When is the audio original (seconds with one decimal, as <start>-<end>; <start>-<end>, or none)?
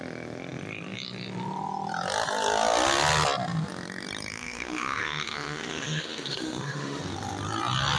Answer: 0.0-4.3; 7.0-8.0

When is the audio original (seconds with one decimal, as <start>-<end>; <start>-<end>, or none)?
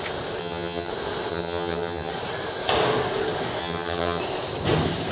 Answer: 0.0-0.4; 0.9-1.3; 2.1-3.6; 4.2-5.1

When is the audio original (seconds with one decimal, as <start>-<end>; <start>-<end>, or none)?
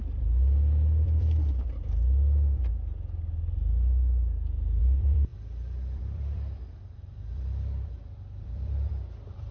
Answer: 2.7-4.8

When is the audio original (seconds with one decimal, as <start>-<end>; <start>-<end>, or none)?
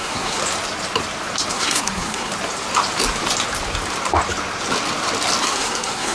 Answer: 0.4-1.5; 2.3-5.4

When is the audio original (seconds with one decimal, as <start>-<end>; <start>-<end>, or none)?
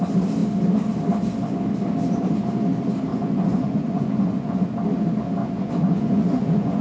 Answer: 0.0-3.1; 4.6-5.4